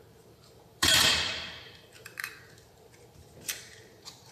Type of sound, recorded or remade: remade